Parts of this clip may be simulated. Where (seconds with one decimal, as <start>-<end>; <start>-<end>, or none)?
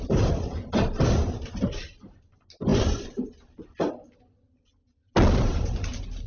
none